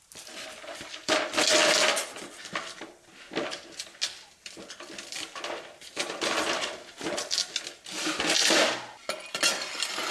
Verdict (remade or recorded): recorded